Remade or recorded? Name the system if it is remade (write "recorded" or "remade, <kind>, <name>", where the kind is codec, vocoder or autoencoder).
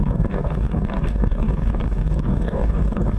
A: remade, codec, DAC